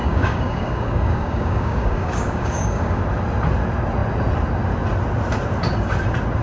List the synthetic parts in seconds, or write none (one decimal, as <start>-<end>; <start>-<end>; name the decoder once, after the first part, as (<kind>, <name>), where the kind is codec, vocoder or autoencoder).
0.0-3.0 (codec, DAC)